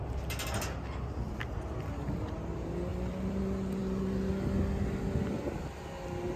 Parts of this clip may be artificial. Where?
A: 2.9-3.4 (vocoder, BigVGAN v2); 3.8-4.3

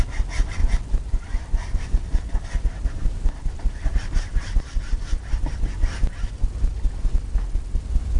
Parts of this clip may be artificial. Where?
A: 0.6-4.8 (vocoder, BigVGAN v2)

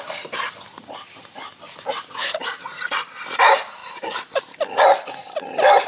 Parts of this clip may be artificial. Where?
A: 0.0-5.9 (vocoder, BigVGAN v2)

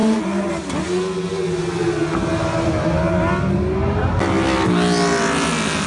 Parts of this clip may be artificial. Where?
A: 0.0-0.5 (vocoder, BigVGAN v2)